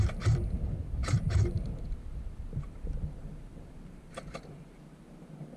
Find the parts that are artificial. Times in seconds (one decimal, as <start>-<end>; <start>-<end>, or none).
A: 0.0-5.6